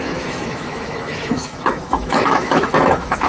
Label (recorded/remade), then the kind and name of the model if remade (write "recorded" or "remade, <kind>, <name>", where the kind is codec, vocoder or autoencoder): remade, autoencoder, DAC-VAE